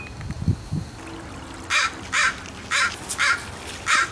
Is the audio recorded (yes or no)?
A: yes